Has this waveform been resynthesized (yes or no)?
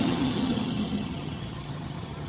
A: yes